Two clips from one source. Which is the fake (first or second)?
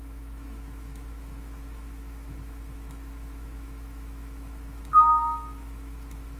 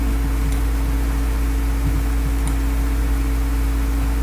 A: first